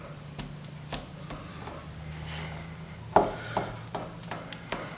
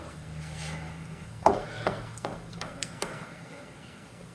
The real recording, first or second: first